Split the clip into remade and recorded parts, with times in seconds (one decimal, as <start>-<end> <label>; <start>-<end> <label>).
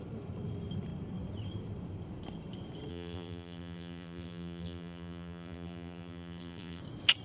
0.0-2.9 recorded; 2.9-6.8 remade; 6.8-7.2 recorded